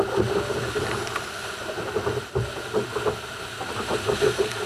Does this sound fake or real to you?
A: real